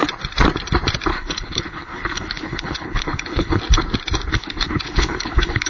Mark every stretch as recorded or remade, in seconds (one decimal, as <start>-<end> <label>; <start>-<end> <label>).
0.0-1.1 recorded; 1.1-3.6 remade; 3.6-4.3 recorded; 4.3-5.7 remade

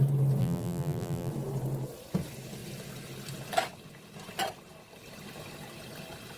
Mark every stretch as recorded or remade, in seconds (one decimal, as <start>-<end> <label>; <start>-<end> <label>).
0.0-0.4 recorded; 0.4-1.3 remade; 1.3-6.4 recorded

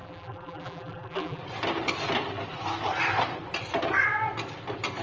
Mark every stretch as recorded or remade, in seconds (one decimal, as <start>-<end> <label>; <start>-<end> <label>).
0.0-1.4 remade; 1.4-5.0 recorded